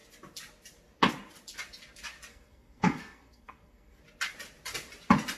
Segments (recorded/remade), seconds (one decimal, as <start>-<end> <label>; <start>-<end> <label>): 0.0-2.3 recorded; 2.3-4.0 remade; 4.0-5.4 recorded